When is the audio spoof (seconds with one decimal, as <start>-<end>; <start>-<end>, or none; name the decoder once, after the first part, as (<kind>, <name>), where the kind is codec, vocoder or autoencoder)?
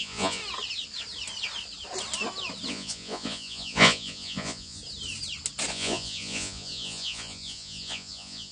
0.0-0.4 (vocoder, Vocos); 2.7-4.8; 5.7-8.5